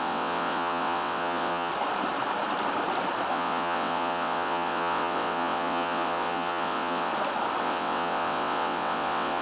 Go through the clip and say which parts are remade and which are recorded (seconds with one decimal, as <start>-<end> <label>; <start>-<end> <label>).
0.0-1.7 remade; 1.7-3.3 recorded; 3.3-7.1 remade; 7.1-7.6 recorded; 7.6-9.4 remade